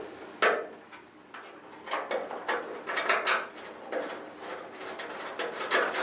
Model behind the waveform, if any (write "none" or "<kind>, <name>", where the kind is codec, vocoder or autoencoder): none